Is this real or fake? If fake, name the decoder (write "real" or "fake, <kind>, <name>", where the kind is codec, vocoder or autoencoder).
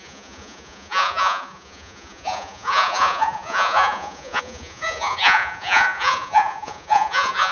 fake, vocoder, Vocos